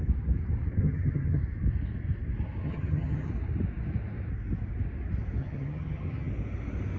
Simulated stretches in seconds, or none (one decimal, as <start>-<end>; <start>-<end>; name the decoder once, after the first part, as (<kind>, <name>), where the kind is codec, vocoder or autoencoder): 0.8-1.4 (vocoder, HiFi-GAN); 2.6-3.3; 5.4-6.3